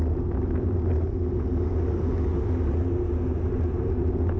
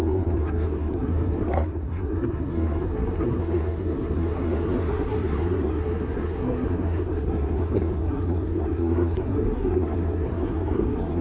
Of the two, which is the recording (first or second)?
first